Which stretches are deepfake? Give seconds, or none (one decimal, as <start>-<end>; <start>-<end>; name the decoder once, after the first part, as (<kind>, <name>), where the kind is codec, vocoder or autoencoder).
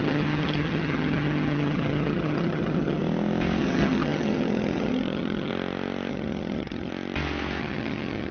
0.0-3.0 (vocoder, HiFi-GAN); 3.6-5.5; 6.1-6.9; 7.6-8.3